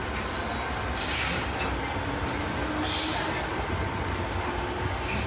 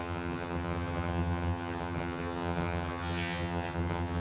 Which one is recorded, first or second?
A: first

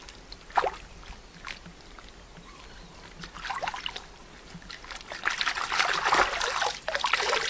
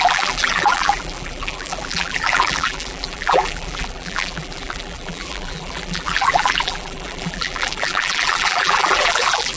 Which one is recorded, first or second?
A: first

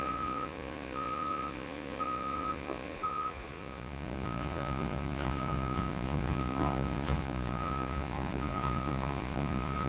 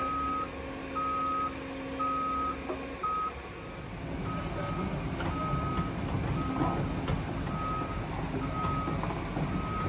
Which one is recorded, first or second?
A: second